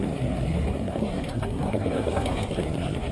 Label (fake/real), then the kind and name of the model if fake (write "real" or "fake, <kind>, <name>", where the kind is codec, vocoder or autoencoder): fake, codec, SNAC